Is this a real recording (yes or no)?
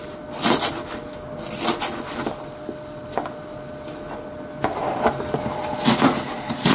yes